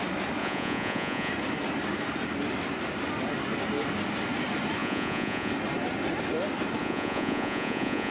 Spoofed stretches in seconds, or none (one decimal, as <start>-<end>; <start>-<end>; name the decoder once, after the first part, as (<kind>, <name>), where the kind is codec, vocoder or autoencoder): 0.4-1.3 (vocoder, Vocos); 4.8-5.5; 6.8-8.1